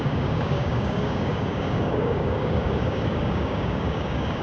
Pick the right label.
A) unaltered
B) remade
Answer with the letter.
B